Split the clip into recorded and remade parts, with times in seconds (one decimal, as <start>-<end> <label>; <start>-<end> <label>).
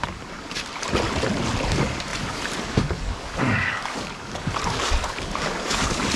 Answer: 0.0-0.7 remade; 0.7-1.7 recorded; 1.7-6.2 remade